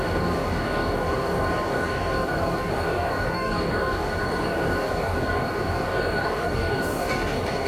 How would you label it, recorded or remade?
remade